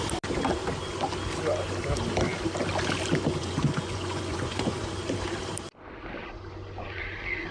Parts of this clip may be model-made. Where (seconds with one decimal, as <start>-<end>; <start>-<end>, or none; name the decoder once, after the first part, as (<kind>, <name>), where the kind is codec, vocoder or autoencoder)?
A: 3.4-4.8 (vocoder, Vocos)